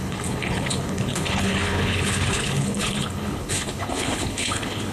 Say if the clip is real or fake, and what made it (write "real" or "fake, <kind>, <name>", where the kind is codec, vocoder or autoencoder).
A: fake, codec, HILCodec